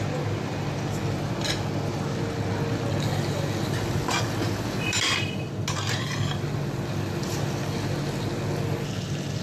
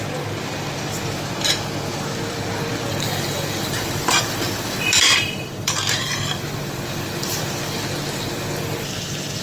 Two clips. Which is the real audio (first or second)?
first